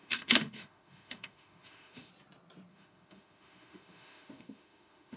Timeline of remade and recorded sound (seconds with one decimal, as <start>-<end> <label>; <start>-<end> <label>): 0.0-2.1 remade; 2.1-2.7 recorded; 2.7-5.2 remade